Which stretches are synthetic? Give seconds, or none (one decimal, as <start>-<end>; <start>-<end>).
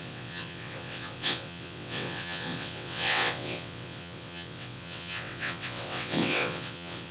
0.0-7.1